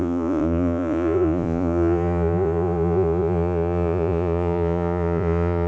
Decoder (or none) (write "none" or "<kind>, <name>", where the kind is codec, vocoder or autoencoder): vocoder, Vocos